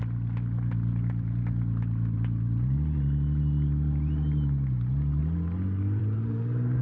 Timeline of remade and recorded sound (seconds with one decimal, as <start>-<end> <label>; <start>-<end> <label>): 0.0-6.8 recorded